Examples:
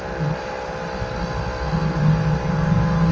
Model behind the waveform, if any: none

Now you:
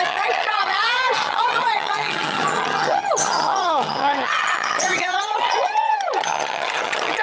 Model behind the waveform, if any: vocoder, HiFi-GAN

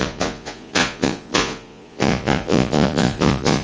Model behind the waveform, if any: vocoder, Vocos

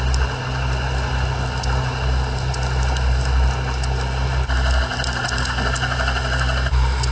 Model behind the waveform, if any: none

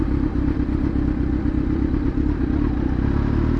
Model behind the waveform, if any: none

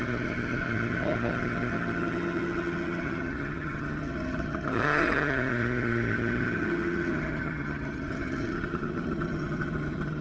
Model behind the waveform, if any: vocoder, HiFi-GAN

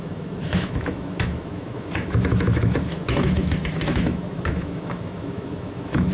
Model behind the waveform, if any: autoencoder, DAC-VAE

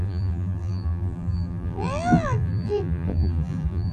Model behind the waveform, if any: vocoder, BigVGAN v2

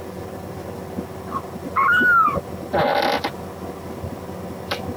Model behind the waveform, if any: none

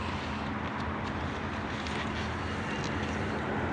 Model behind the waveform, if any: none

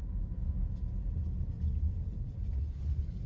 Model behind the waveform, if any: none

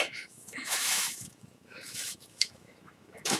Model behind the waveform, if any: autoencoder, DAC-VAE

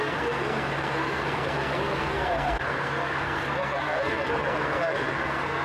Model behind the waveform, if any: codec, SNAC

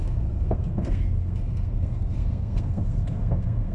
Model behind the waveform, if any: codec, SNAC